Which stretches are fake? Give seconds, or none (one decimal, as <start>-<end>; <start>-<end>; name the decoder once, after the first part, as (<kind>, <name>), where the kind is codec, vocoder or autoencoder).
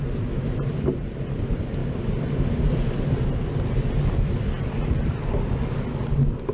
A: none